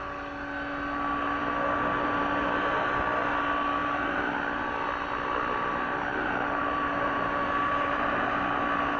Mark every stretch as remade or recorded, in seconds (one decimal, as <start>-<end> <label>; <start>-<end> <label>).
0.0-3.8 recorded; 3.8-4.3 remade; 4.3-6.1 recorded; 6.1-8.0 remade; 8.0-9.0 recorded